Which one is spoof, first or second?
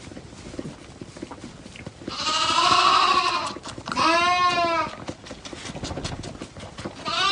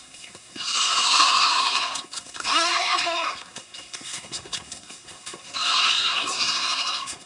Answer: second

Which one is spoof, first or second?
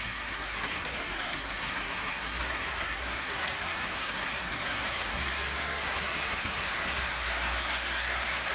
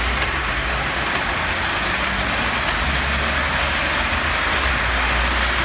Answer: first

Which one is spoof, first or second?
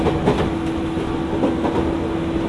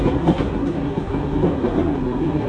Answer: second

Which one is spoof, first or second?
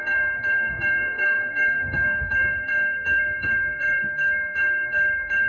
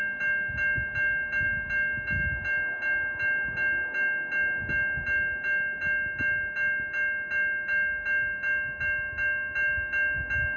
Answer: first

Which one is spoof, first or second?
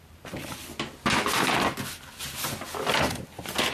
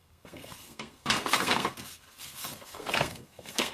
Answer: second